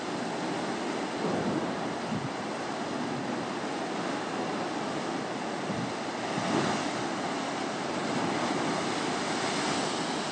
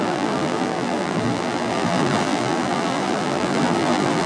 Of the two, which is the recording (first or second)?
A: first